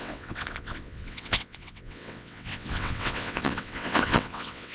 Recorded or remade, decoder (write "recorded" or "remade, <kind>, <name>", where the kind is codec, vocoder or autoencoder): remade, vocoder, WaveNeXt